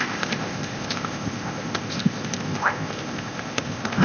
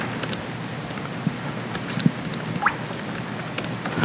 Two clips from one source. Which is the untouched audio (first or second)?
second